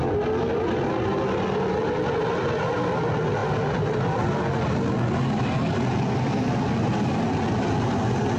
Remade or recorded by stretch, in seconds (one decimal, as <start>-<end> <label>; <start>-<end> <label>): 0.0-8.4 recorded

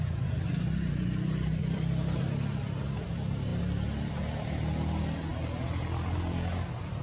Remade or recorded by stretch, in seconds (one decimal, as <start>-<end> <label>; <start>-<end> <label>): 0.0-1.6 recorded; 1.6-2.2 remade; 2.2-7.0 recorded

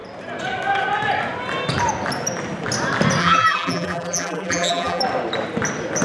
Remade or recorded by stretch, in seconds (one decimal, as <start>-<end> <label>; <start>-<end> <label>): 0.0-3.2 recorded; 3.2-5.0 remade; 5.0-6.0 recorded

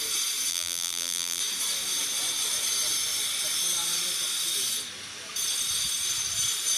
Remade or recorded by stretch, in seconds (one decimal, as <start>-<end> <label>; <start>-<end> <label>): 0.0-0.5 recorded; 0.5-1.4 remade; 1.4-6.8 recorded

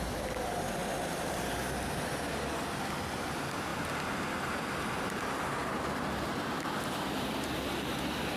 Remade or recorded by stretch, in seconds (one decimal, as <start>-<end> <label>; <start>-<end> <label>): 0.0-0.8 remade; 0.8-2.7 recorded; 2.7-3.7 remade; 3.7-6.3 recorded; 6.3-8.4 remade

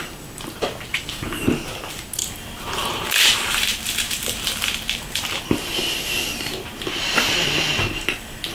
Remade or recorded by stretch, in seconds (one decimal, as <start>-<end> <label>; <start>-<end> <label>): 0.0-2.2 recorded; 2.2-5.4 remade; 5.4-8.5 recorded